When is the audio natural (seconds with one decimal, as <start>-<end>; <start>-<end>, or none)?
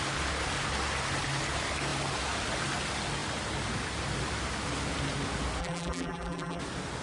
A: 0.0-5.6; 6.6-7.0